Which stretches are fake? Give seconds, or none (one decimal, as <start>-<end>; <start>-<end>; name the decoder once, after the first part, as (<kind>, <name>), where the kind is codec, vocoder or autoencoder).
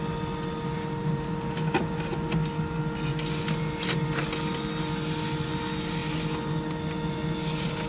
none